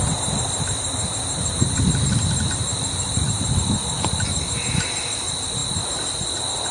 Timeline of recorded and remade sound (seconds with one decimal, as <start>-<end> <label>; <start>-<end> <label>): 0.0-6.7 recorded